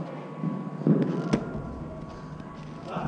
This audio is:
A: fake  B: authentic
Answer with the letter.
B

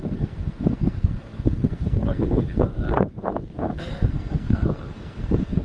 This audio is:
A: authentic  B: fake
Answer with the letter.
B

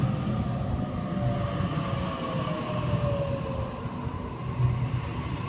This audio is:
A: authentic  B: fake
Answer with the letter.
A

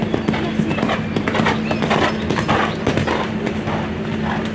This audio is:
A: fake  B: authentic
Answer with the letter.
B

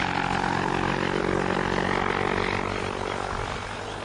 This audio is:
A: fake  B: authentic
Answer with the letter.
B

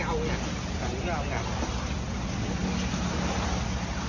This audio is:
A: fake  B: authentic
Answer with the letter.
B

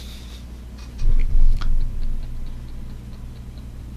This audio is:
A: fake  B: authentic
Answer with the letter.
B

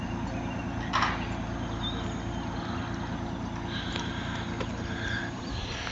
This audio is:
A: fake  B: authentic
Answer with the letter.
B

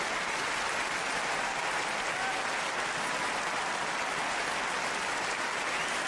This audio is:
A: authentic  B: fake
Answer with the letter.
A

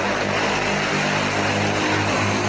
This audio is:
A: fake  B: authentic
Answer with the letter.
B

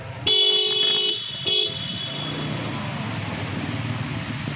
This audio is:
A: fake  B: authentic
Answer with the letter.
B